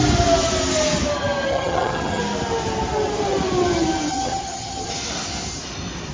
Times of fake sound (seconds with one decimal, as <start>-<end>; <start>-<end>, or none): 1.5-2.2; 4.1-4.9